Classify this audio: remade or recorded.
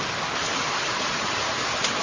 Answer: remade